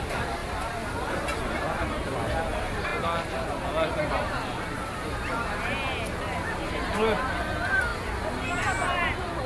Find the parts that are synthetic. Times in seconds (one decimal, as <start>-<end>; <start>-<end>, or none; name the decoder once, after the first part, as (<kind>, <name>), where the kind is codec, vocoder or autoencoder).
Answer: none